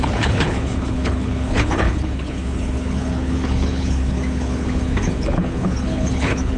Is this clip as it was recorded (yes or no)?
no